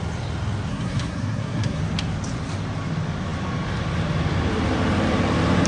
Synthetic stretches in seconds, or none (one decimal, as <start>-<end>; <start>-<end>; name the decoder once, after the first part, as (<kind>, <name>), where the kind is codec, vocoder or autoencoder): 0.7-1.8 (codec, SNAC)